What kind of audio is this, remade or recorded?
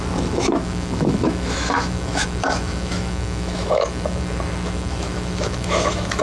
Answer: remade